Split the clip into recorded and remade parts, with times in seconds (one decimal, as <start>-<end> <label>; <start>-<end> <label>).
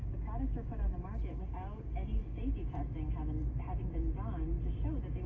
0.0-5.3 recorded